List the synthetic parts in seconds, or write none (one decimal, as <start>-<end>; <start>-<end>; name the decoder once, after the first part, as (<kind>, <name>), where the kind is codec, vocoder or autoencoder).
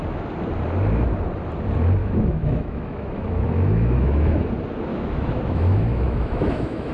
2.0-4.5 (autoencoder, DAC-VAE); 4.9-6.9